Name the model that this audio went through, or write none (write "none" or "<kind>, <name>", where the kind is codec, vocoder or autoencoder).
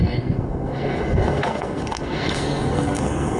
codec, SNAC